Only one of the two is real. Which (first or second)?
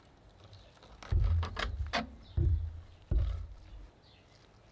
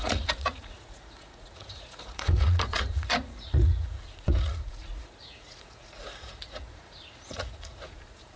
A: first